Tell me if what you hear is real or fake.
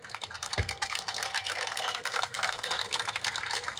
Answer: fake